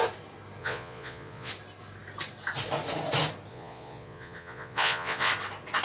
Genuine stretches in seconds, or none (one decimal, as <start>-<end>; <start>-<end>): 0.0-0.6; 1.5-3.5; 5.3-5.8